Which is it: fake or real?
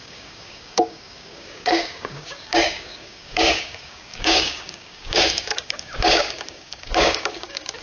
fake